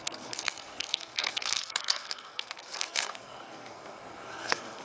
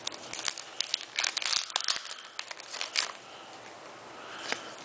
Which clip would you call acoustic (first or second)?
second